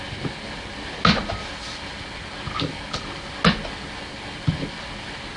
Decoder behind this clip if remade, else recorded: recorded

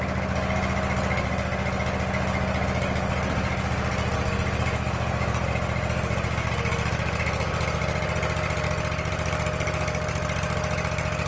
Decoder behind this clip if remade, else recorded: recorded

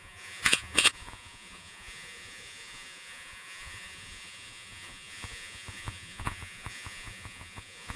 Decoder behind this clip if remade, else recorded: remade, vocoder, Vocos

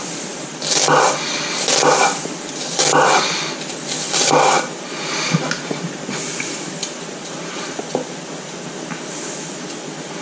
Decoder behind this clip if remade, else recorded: recorded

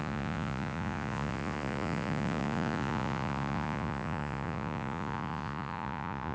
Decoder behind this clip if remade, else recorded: remade, vocoder, Vocos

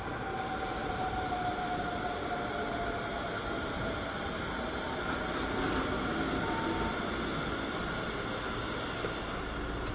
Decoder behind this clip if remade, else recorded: recorded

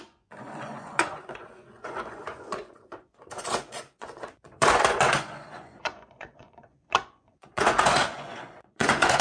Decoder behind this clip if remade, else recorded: remade, vocoder, Vocos